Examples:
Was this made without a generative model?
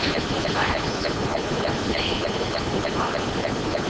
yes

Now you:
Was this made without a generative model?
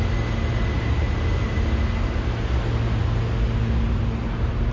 yes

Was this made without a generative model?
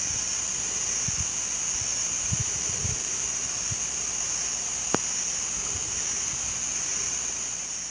no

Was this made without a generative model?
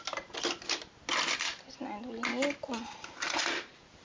yes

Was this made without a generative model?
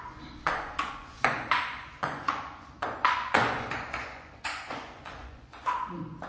no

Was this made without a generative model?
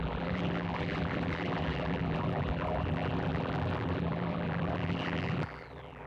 no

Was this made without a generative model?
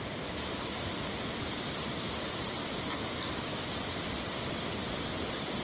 yes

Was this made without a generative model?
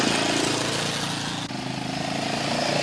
yes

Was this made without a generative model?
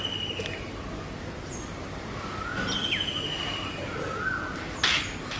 yes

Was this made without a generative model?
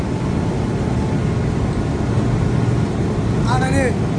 yes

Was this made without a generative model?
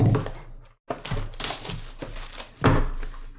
yes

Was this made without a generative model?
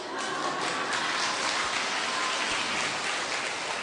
yes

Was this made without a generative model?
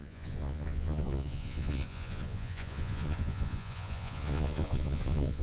no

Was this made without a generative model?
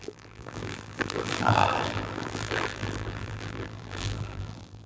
no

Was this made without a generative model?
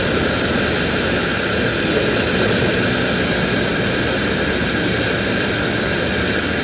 yes